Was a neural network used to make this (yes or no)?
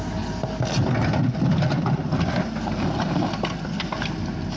no